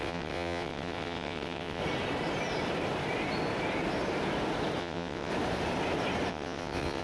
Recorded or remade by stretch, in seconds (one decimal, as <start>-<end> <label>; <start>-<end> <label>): 0.0-1.8 remade; 1.8-4.8 recorded; 4.8-5.3 remade; 5.3-6.3 recorded; 6.3-7.0 remade